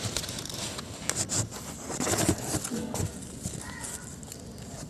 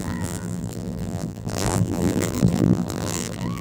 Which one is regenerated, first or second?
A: second